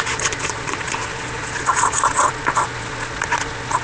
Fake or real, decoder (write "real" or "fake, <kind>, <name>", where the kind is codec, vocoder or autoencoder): fake, vocoder, Vocos